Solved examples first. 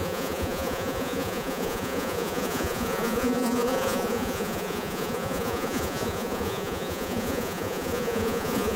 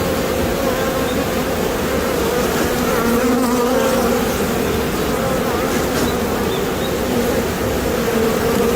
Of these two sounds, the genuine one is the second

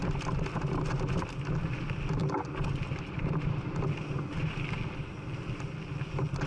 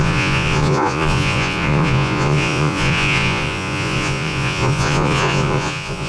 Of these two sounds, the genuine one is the first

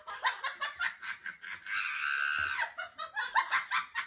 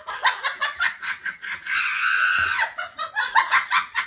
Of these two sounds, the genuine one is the first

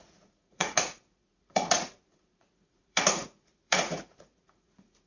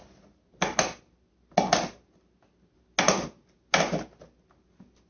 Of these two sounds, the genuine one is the second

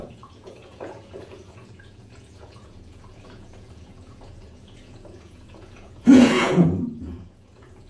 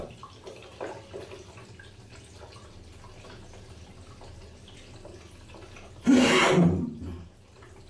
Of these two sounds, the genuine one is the second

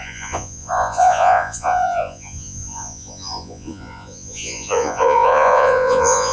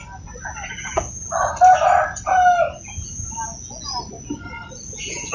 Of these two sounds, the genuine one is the second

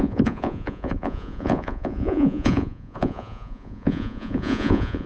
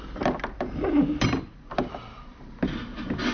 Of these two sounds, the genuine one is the second